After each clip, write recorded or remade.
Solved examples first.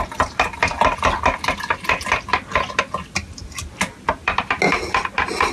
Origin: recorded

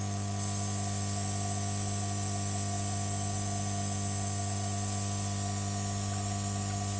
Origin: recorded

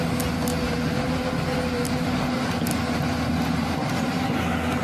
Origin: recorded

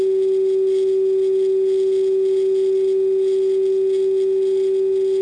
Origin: recorded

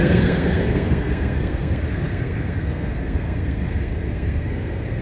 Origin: remade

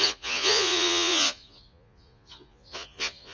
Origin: remade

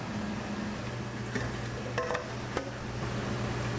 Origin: recorded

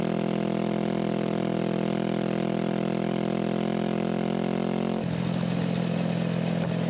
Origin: recorded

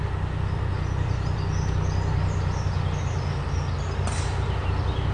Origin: recorded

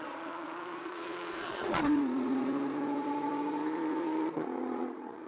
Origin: remade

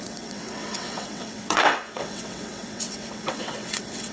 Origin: remade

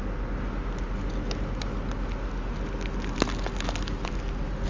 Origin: recorded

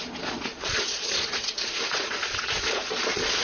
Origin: remade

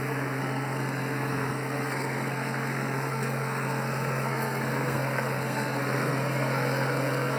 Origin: remade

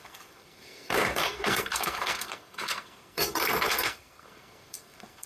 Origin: remade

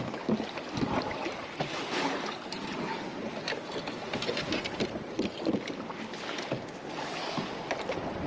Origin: recorded